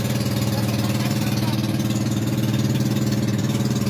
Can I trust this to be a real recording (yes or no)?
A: no